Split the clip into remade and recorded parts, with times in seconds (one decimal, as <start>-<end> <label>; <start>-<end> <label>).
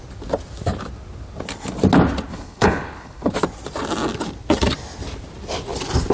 0.0-2.3 recorded; 2.3-3.3 remade; 3.3-6.1 recorded